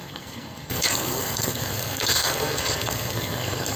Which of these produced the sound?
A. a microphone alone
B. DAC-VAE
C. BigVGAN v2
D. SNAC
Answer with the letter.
D